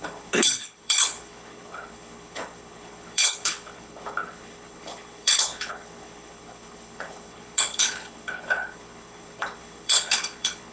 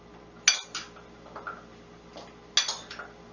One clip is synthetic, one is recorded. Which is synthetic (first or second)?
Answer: first